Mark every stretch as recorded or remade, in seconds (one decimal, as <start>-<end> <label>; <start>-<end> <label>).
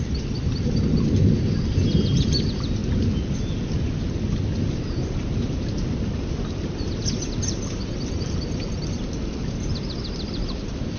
0.0-2.8 remade; 2.8-7.5 recorded; 7.5-11.0 remade